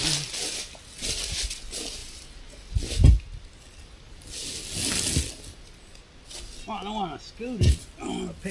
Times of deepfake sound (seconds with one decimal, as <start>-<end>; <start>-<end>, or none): none